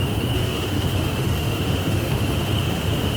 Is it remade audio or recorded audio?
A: remade